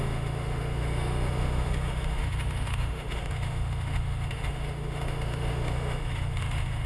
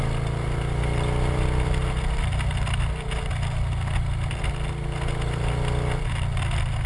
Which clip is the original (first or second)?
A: second